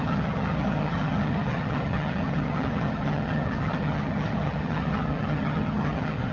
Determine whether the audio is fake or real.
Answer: fake